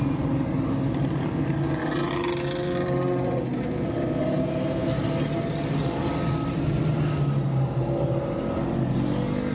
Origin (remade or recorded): recorded